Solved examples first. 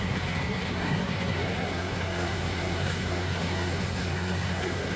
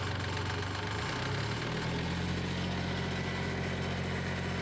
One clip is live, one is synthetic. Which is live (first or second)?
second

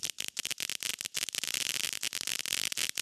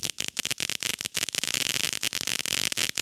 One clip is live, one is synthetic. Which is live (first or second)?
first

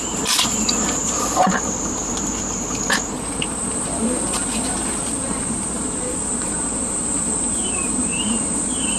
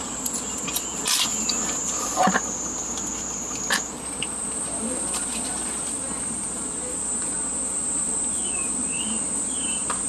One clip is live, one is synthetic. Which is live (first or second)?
second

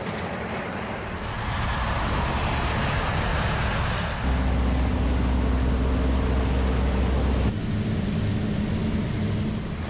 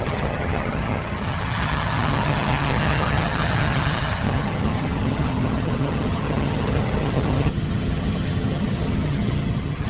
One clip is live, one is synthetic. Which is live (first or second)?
first